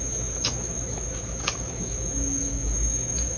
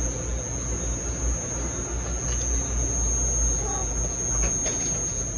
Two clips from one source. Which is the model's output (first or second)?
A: first